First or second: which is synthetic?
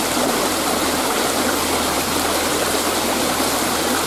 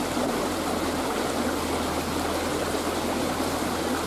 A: first